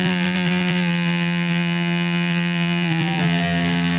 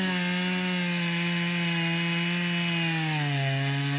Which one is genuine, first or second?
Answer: second